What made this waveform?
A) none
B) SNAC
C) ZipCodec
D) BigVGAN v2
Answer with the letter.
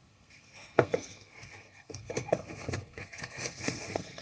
B